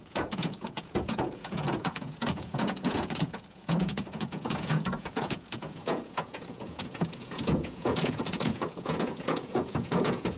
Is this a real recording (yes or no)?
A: no